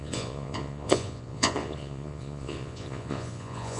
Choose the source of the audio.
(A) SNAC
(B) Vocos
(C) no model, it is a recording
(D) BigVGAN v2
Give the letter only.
B